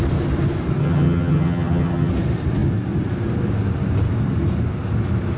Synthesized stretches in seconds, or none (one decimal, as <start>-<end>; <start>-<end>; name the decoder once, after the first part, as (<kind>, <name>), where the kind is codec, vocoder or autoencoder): 0.8-2.1 (vocoder, HiFi-GAN)